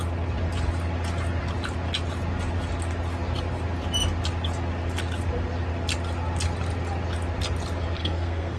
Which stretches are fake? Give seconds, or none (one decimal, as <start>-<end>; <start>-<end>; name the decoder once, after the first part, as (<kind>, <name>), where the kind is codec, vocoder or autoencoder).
8.0-8.6 (codec, SNAC)